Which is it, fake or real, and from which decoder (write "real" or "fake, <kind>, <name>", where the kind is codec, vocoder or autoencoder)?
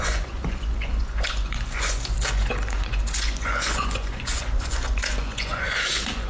fake, vocoder, Vocos